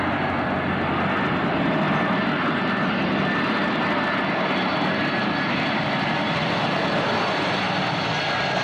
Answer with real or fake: real